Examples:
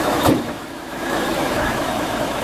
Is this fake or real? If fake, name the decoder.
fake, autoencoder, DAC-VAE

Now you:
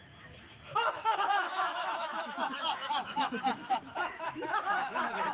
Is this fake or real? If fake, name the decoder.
fake, autoencoder, DAC-VAE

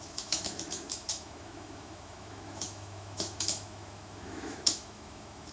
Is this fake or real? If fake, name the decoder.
fake, autoencoder, DAC-VAE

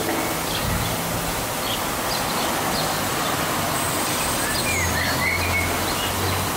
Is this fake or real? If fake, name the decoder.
real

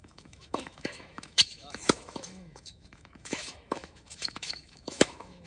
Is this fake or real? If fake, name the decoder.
fake, autoencoder, DAC-VAE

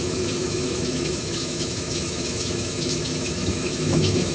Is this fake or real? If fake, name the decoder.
fake, autoencoder, DAC-VAE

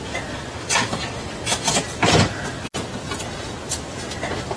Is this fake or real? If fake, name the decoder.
real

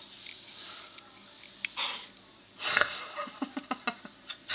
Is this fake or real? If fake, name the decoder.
real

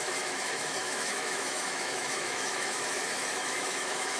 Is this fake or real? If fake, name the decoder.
fake, autoencoder, DAC-VAE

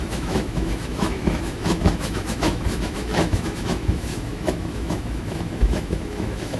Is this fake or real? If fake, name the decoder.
fake, autoencoder, DAC-VAE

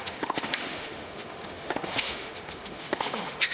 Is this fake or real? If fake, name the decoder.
fake, autoencoder, DAC-VAE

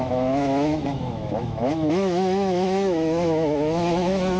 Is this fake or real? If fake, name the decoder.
fake, autoencoder, DAC-VAE